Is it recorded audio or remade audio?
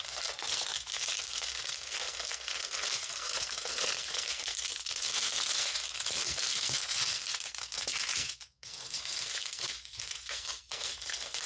remade